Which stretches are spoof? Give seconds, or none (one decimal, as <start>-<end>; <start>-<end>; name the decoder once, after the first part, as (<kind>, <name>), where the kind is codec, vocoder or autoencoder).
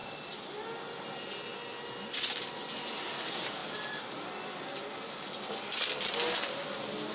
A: none